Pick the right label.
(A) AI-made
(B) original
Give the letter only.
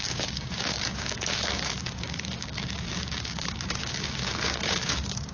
A